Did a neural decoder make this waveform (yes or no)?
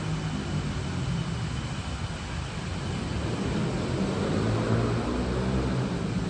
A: no